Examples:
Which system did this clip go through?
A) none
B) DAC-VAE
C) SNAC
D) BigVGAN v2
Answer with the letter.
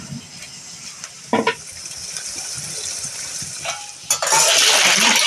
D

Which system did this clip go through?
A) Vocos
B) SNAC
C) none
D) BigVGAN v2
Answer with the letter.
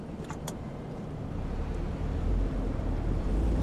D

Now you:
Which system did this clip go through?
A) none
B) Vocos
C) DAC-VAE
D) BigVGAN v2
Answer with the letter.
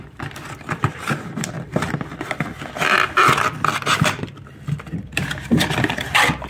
D